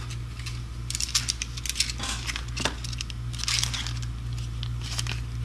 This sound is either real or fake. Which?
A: real